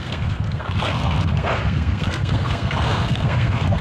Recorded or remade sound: remade